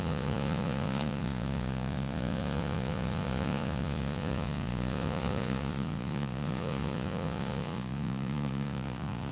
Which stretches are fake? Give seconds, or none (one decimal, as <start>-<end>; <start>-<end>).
0.0-9.3

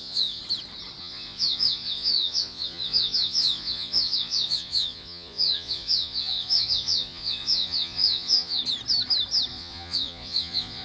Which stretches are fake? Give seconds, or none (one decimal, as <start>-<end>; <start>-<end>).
0.0-0.4; 1.0-8.6; 9.5-10.8

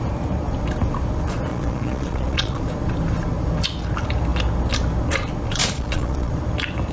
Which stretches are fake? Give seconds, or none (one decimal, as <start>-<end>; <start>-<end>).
1.5-2.6; 5.6-6.3

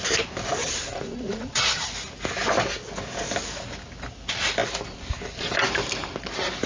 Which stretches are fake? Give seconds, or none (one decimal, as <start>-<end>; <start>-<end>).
0.6-1.8